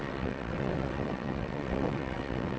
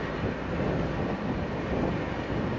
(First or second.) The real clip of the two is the second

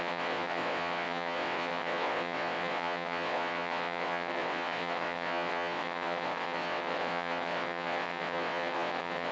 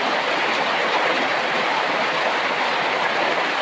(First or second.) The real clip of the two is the second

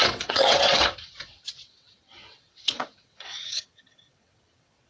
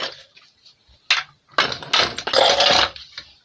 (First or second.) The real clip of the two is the second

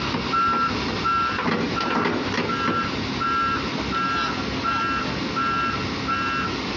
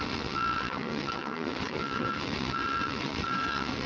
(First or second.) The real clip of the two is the first